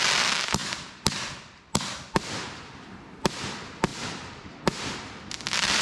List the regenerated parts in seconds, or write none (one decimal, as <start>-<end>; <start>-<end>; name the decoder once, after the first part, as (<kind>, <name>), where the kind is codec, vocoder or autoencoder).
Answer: 0.6-1.6 (vocoder, BigVGAN v2); 3.9-5.8